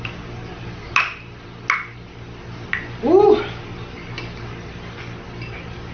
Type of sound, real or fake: real